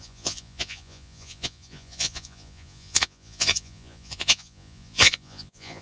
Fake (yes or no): yes